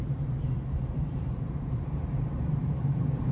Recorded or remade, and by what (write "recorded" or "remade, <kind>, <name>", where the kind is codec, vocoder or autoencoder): remade, vocoder, BigVGAN v2